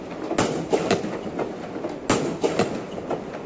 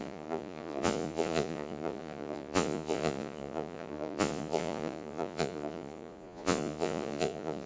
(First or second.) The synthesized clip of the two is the second